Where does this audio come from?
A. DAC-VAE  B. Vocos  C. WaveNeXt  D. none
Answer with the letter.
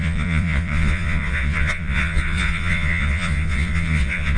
B